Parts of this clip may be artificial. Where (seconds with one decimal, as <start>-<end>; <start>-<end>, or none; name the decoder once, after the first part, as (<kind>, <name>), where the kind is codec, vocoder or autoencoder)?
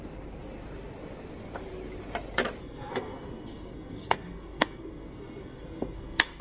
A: 2.6-6.4 (codec, SNAC)